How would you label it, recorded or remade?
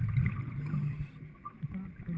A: recorded